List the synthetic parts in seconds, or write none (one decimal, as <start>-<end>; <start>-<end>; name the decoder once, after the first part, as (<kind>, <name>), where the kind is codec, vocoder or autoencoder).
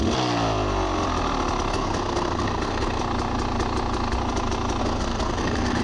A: 1.7-3.0 (codec, SNAC); 4.8-5.8